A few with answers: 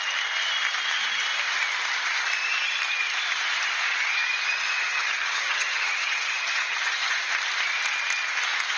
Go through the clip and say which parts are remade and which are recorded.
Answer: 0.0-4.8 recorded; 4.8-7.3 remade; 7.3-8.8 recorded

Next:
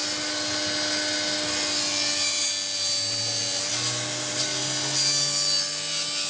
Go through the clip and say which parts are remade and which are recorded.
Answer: 0.0-6.3 recorded

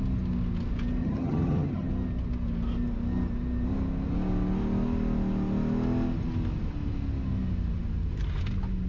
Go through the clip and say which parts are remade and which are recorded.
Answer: 0.0-1.0 recorded; 1.0-1.9 remade; 1.9-8.9 recorded

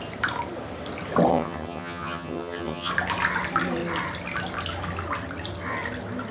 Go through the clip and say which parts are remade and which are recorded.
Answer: 0.0-1.3 recorded; 1.3-2.9 remade; 2.9-6.3 recorded

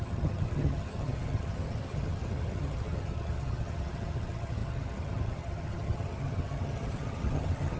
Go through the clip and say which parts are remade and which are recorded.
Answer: 0.0-7.8 remade

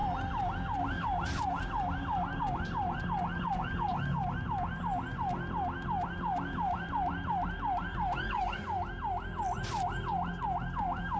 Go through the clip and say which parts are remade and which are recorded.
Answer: 0.0-11.2 recorded

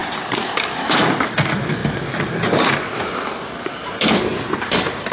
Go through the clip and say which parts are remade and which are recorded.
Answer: 0.0-5.1 recorded